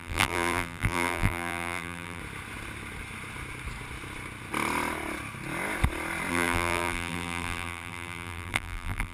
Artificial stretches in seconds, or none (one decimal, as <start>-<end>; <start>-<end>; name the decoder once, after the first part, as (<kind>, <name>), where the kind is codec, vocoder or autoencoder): 0.0-2.2 (vocoder, BigVGAN v2); 6.3-9.1